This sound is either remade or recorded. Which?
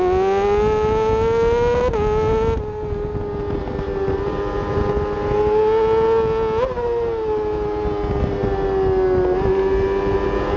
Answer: recorded